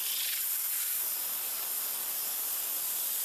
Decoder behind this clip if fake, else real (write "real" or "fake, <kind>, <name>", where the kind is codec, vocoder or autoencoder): real